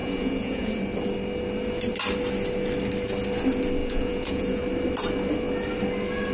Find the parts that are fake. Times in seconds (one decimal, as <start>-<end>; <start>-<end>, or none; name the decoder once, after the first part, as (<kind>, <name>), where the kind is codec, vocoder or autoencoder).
0.0-0.8 (vocoder, Vocos); 3.8-4.6